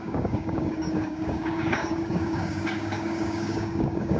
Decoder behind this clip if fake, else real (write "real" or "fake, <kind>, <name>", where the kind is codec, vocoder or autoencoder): fake, codec, DAC